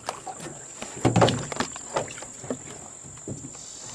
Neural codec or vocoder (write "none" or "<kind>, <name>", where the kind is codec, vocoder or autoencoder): none